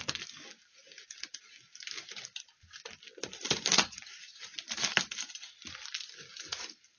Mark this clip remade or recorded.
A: recorded